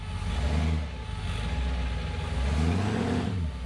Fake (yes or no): no